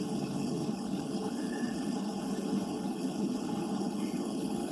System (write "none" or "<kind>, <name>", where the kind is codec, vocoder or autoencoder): codec, HILCodec